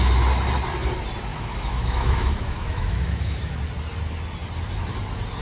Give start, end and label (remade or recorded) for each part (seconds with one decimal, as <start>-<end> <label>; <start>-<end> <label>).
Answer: 0.0-1.3 recorded; 1.3-3.5 remade; 3.5-5.4 recorded